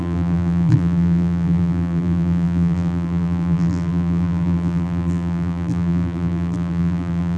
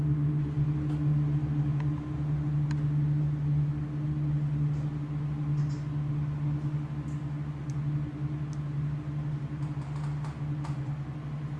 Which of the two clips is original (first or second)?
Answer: second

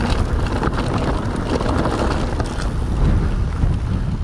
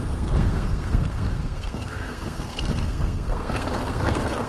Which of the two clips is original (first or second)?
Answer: first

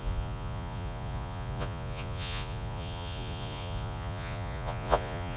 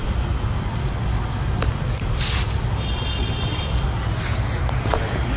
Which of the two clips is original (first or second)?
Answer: second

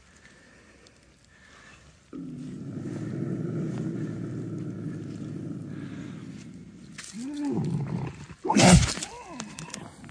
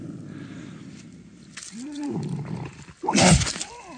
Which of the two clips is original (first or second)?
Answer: first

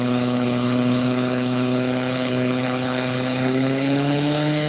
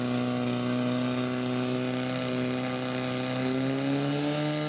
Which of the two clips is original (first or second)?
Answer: second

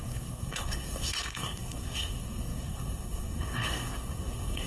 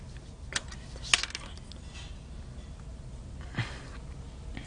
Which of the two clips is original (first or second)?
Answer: second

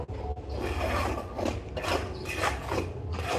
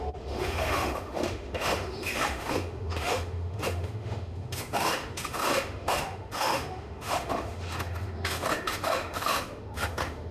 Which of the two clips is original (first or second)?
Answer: first